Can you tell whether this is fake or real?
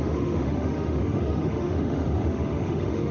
fake